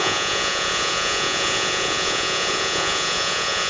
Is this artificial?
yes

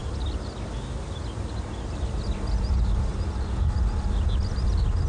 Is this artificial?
no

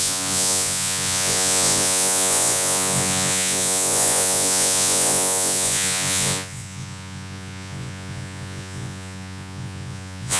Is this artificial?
yes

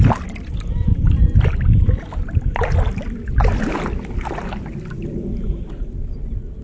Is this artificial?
no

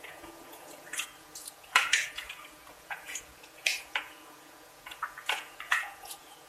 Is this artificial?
yes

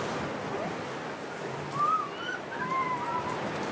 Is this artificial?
no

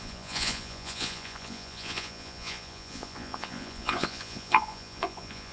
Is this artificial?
yes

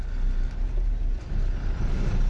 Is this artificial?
no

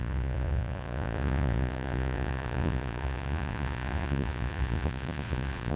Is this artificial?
yes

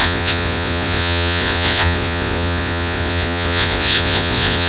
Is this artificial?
yes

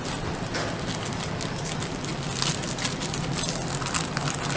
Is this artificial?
no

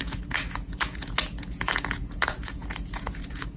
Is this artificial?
yes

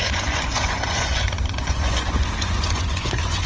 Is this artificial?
yes